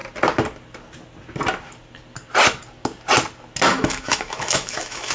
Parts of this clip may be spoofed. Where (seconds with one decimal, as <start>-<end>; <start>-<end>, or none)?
3.7-5.1